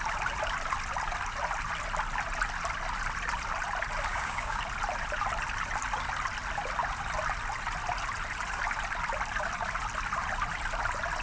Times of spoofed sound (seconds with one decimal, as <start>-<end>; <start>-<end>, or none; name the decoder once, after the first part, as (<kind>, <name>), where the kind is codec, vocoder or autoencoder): 4.1-4.6 (codec, DAC)